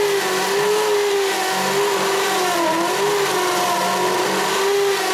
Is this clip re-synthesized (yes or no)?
no